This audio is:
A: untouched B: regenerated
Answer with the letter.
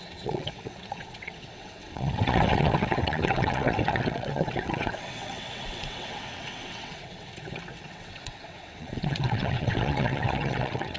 B